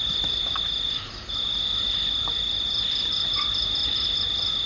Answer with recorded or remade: recorded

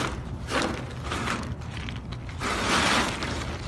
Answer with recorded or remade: recorded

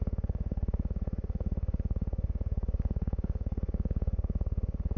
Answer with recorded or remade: remade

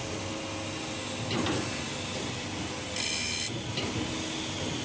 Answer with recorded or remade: recorded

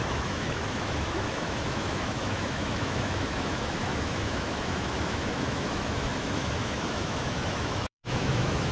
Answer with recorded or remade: remade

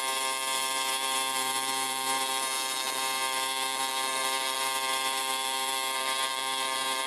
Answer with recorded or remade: remade